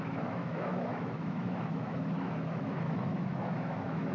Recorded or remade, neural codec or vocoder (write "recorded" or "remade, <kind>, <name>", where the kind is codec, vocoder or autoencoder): remade, autoencoder, DAC-VAE